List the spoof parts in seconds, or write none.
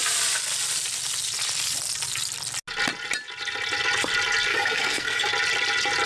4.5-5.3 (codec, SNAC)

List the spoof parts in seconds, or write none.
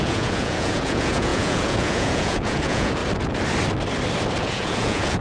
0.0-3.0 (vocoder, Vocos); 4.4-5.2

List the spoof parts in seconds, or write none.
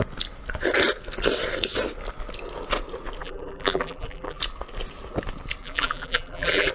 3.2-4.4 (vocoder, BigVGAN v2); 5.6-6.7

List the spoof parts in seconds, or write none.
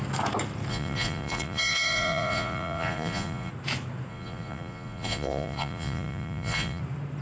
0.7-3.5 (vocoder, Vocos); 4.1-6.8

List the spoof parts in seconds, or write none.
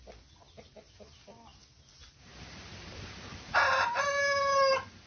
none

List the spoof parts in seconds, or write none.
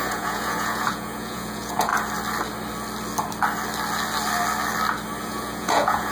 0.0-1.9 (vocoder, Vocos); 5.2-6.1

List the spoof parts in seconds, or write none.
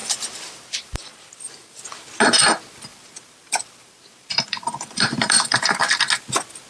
0.0-1.8 (vocoder, BigVGAN v2); 2.9-5.9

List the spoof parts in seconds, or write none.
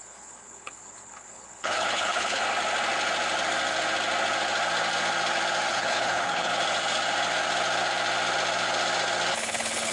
0.0-2.4 (codec, HILCodec); 5.7-6.5; 9.3-9.9